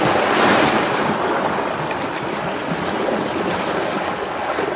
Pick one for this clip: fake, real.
real